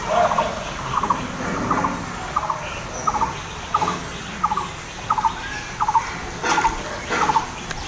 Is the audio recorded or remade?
recorded